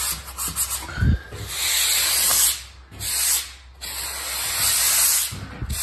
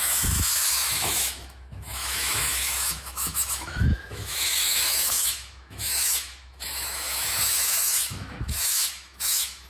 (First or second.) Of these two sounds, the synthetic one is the second